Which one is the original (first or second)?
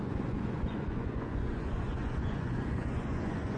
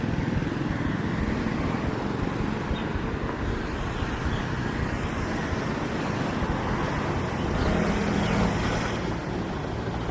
second